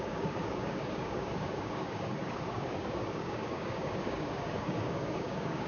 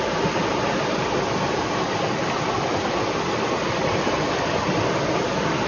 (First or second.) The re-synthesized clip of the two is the first